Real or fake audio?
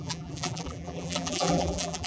fake